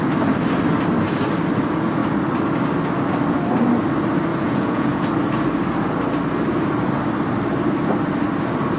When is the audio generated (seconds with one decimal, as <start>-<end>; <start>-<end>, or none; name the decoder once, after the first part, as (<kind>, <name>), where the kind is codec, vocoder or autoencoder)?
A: 4.3-5.0 (vocoder, Vocos)